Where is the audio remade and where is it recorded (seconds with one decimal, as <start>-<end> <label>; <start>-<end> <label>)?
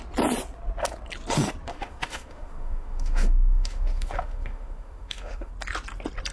0.0-1.7 recorded; 1.7-5.5 remade; 5.5-6.3 recorded